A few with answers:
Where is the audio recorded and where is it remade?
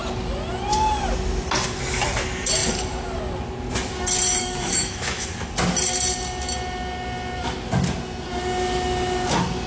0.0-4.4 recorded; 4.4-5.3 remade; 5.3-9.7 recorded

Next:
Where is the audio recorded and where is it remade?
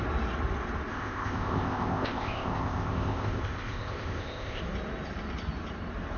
0.0-0.9 recorded; 0.9-4.6 remade; 4.6-6.2 recorded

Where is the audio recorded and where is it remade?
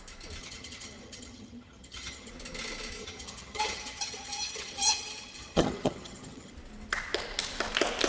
0.0-0.4 recorded; 0.4-2.3 remade; 2.3-3.0 recorded; 3.0-6.5 remade; 6.5-8.1 recorded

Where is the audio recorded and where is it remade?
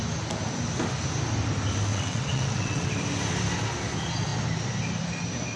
0.0-1.9 recorded; 1.9-2.9 remade; 2.9-5.6 recorded